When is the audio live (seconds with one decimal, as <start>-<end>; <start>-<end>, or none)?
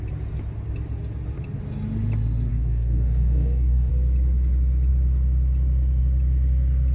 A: 0.0-2.5; 3.9-6.9